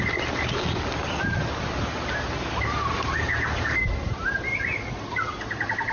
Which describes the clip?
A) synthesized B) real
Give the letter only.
B